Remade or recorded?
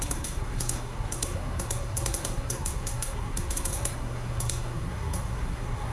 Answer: remade